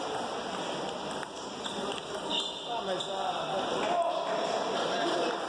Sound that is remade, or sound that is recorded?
recorded